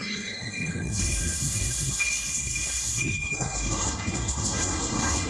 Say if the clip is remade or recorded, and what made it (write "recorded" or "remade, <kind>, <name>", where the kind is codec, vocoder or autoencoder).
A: remade, codec, SNAC